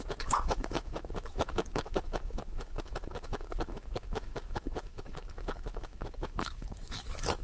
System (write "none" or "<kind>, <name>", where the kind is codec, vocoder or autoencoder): autoencoder, DAC-VAE